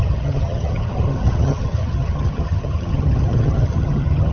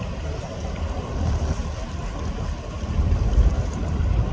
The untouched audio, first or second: second